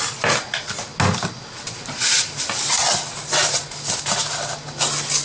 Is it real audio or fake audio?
real